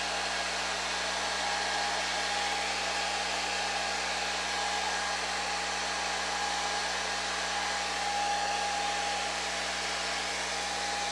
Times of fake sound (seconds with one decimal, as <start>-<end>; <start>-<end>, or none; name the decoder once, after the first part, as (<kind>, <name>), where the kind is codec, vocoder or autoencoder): none